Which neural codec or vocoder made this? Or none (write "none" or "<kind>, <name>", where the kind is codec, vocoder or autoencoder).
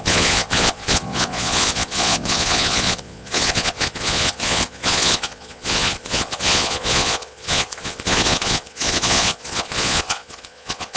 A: vocoder, Vocos